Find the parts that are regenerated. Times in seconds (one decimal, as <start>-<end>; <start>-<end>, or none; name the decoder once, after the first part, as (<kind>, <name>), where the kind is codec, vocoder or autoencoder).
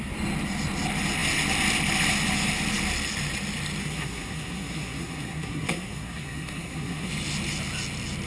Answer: 3.8-7.1 (codec, SNAC)